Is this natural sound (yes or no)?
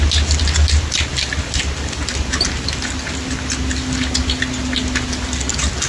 yes